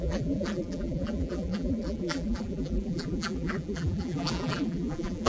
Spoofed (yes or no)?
yes